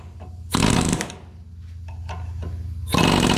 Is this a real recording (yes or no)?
yes